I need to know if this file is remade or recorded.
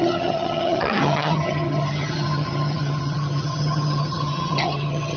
remade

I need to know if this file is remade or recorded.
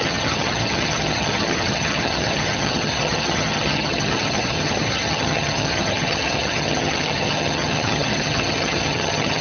remade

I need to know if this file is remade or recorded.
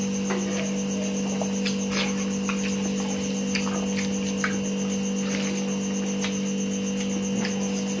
recorded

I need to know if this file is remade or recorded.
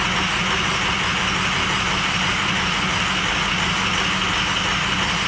recorded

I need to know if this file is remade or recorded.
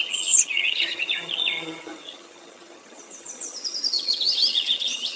remade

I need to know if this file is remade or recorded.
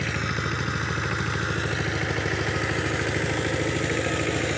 recorded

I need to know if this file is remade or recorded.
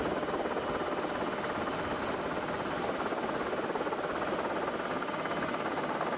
recorded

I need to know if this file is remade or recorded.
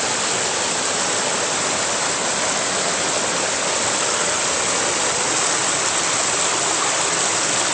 recorded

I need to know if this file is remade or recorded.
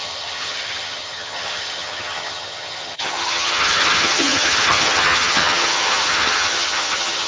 remade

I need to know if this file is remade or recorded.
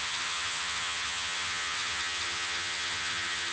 remade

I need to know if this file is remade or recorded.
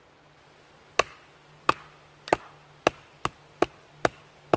recorded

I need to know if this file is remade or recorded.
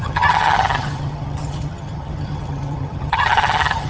remade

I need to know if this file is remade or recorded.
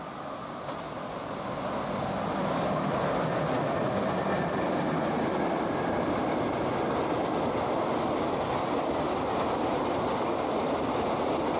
recorded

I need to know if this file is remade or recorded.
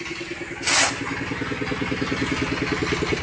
recorded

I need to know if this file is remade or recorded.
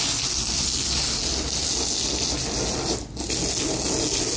recorded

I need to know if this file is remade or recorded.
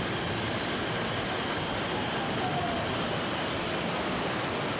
recorded